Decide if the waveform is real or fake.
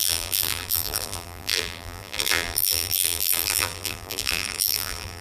fake